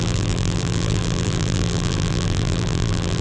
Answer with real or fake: fake